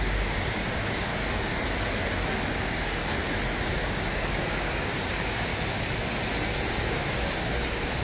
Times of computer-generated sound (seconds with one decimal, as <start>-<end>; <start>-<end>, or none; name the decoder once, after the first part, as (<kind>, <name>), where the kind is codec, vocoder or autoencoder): 0.0-1.1 (codec, DAC); 2.5-3.0; 3.8-5.5; 6.8-8.0